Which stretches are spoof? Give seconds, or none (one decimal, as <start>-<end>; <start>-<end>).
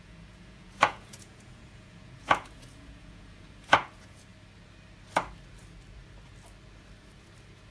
0.0-4.3